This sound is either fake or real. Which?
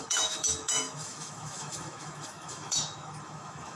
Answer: fake